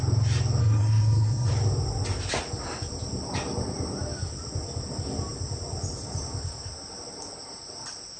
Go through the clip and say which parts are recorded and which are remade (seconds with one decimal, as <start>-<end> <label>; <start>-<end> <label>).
0.0-0.6 recorded; 0.6-1.5 remade; 1.5-8.2 recorded